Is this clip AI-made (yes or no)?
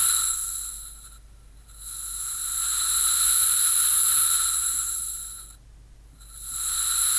no